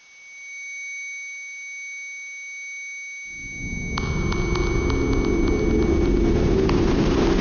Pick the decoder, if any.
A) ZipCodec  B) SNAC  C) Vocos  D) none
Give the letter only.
D